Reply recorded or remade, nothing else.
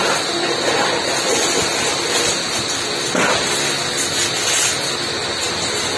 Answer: recorded